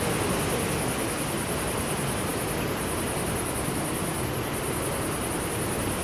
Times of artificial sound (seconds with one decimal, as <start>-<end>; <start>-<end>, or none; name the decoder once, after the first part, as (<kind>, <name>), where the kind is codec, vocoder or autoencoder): none